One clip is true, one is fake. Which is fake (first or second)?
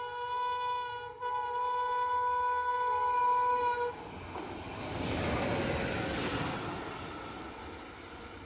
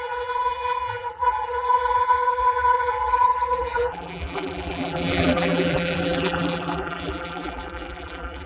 second